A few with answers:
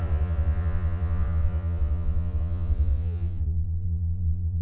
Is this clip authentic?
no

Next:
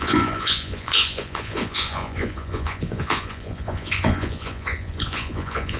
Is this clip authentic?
no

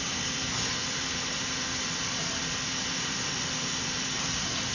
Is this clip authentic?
no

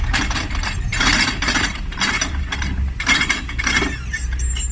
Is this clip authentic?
yes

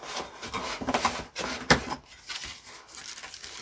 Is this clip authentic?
yes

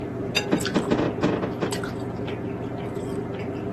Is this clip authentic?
yes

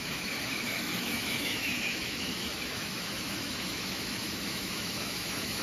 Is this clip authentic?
no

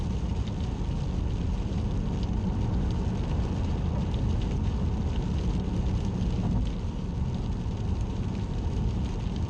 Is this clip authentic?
yes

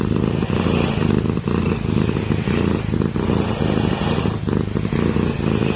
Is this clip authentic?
yes